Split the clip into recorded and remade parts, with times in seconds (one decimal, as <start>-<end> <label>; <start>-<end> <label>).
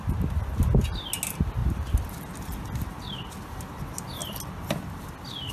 0.0-5.5 recorded